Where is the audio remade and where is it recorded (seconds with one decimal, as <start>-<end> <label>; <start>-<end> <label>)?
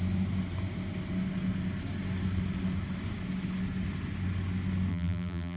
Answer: 0.0-4.9 recorded; 4.9-5.6 remade